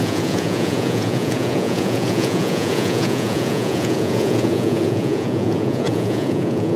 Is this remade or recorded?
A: remade